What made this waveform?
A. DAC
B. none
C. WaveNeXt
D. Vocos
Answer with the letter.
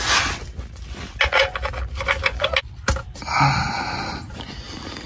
B